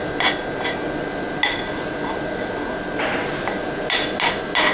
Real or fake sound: real